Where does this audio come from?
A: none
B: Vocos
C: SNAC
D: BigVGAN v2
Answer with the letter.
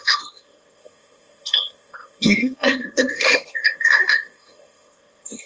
C